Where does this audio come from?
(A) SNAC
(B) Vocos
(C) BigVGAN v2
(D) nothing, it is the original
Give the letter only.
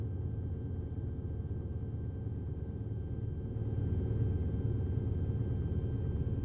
D